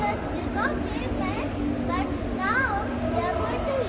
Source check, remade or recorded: recorded